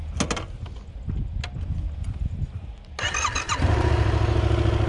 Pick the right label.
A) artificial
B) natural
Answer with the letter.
B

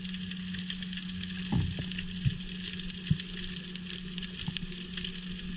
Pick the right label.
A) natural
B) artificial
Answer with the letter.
A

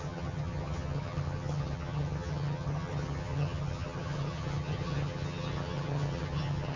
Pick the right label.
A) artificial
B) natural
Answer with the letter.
A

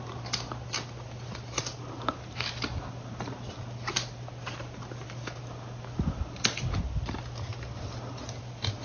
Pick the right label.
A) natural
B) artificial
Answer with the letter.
A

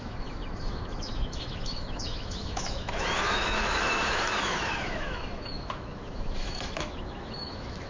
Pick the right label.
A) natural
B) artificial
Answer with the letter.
B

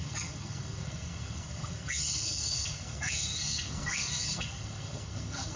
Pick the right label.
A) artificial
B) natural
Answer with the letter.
A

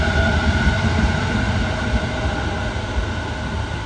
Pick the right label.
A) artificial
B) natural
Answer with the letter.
B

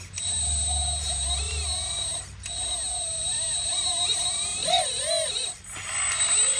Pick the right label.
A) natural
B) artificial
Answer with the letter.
A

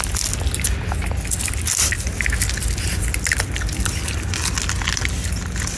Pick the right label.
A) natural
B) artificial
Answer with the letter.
A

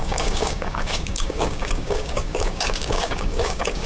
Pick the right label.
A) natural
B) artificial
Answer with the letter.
B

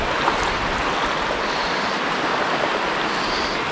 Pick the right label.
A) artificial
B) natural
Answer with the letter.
B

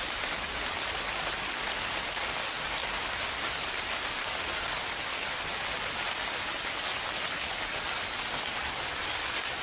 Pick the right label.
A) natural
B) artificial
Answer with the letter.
A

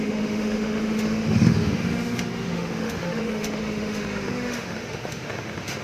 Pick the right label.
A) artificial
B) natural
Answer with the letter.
A